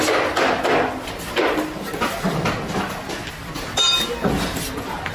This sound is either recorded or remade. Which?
recorded